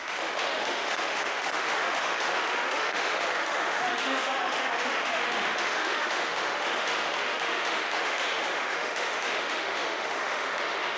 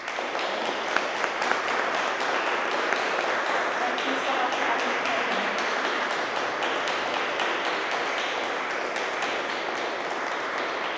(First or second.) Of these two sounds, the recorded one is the second